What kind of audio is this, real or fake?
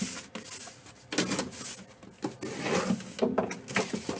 real